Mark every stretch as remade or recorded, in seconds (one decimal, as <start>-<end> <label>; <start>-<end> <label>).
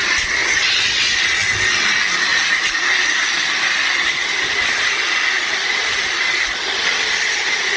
0.0-0.4 recorded; 0.4-1.2 remade; 1.2-7.8 recorded